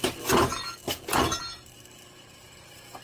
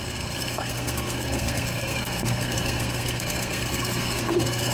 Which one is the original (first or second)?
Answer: first